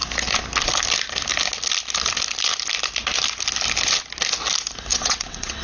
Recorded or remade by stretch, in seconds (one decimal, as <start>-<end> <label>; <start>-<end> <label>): 0.0-4.9 recorded; 4.9-5.6 remade